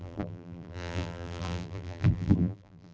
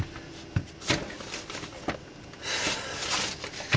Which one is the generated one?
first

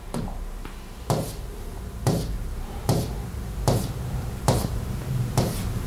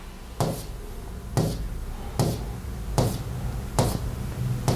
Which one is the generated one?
first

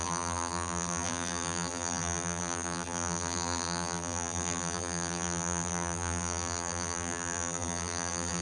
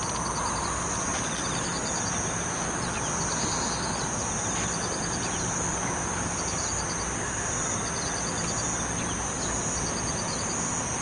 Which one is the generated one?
first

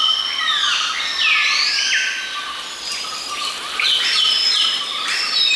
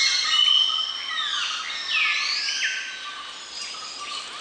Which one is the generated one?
first